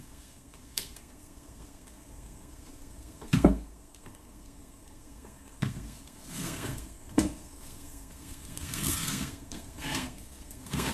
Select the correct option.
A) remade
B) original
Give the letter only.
A